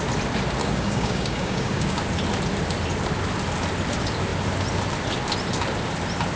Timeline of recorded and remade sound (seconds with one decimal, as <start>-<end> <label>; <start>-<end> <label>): 0.0-0.6 recorded; 0.6-2.0 remade; 2.0-6.4 recorded